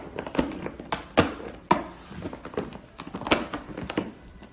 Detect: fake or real real